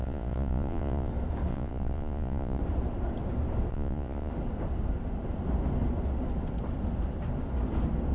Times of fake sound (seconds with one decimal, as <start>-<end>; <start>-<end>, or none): 0.0-1.1; 1.5-2.6; 3.7-4.3